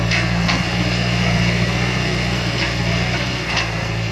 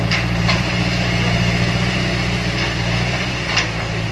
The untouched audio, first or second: second